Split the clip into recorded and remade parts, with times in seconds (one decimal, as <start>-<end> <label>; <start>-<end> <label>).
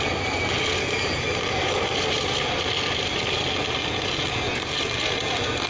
0.0-5.7 recorded